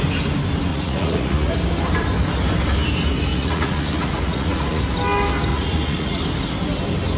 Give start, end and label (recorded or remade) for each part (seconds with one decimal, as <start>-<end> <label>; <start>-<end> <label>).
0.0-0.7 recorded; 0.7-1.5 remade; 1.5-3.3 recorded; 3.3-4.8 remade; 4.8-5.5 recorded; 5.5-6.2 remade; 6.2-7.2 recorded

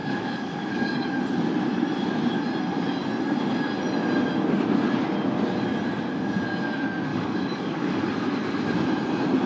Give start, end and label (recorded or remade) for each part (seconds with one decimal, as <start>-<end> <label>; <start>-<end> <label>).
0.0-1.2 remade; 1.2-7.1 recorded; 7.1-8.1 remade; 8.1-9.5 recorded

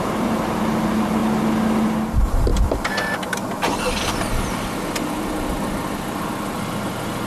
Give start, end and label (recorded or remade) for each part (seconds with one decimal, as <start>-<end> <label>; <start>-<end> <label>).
0.0-1.2 remade; 1.2-2.1 recorded; 2.1-2.5 remade; 2.5-7.3 recorded

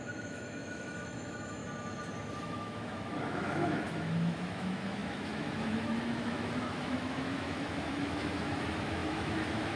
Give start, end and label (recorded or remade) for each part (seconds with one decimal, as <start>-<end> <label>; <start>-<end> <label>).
0.0-1.6 remade; 1.6-2.4 recorded; 2.4-9.8 remade

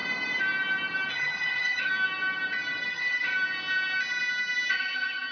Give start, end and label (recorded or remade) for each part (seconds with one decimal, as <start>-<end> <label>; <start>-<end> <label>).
0.0-1.1 recorded; 1.1-1.9 remade; 1.9-2.9 recorded; 2.9-3.3 remade; 3.3-4.7 recorded; 4.7-5.3 remade